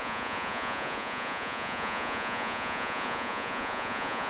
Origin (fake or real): fake